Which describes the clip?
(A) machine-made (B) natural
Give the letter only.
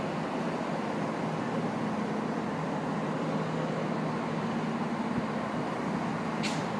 B